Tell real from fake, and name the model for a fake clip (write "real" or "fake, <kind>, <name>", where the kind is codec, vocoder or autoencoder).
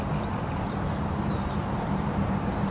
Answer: fake, vocoder, BigVGAN v2